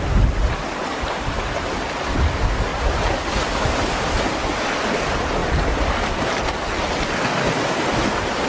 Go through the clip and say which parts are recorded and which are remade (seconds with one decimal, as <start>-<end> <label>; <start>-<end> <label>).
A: 0.0-8.5 recorded